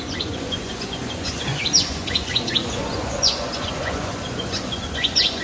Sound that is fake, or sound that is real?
fake